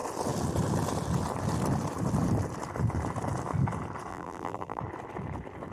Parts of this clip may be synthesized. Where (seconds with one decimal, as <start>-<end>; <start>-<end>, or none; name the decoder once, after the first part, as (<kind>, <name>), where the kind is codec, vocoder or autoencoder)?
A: 4.1-4.8 (vocoder, BigVGAN v2)